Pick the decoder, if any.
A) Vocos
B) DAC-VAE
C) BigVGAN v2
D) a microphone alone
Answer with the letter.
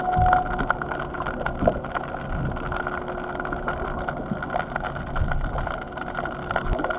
D